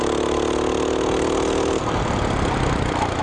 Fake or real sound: real